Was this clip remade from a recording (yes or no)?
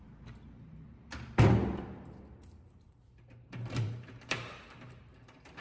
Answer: yes